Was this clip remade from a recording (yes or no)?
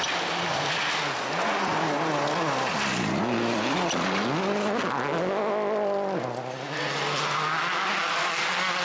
no